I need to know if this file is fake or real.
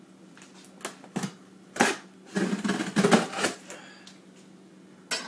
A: real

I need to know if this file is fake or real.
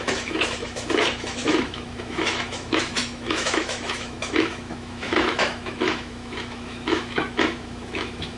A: fake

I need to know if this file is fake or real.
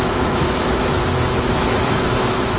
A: fake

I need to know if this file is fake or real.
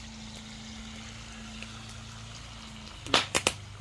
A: real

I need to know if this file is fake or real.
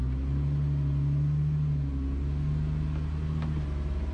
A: real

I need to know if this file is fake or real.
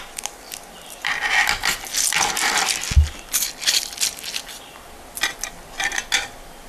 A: real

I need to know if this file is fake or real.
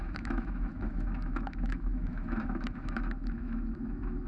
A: fake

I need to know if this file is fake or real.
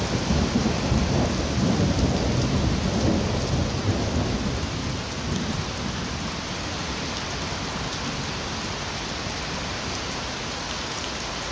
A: real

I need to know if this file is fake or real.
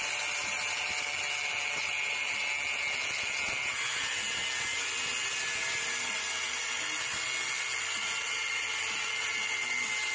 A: real